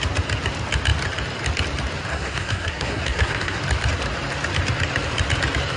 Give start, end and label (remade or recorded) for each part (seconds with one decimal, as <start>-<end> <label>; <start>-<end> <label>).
0.0-2.1 recorded; 2.1-3.6 remade; 3.6-5.8 recorded